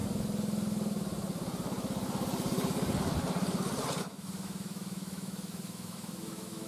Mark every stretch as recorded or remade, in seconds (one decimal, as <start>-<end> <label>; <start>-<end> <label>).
0.0-4.0 recorded; 4.0-6.7 remade